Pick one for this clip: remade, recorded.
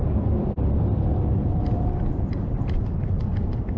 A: remade